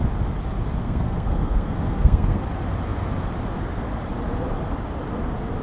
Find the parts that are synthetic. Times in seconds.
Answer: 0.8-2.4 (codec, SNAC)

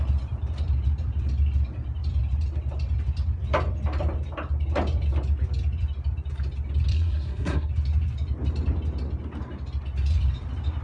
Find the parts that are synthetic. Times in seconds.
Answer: 6.9-7.7 (codec, SNAC)